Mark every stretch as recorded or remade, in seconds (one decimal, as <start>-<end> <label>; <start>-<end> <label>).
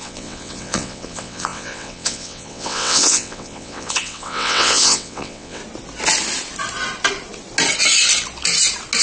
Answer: 0.0-5.6 remade; 5.6-9.0 recorded